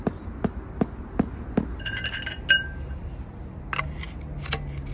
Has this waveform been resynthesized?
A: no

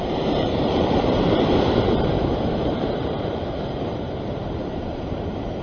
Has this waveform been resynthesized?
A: yes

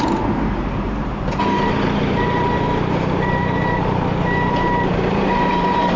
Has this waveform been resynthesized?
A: yes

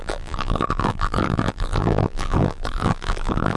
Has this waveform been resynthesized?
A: yes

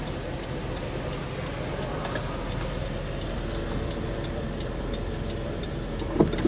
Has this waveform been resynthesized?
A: no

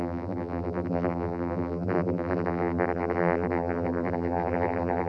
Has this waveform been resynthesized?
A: yes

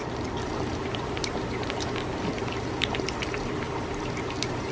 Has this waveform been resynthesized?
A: yes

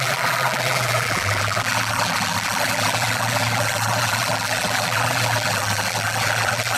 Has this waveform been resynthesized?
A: yes